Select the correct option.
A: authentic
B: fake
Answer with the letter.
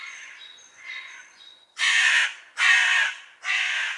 B